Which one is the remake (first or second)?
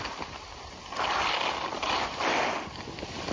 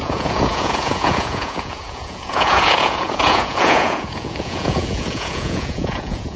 second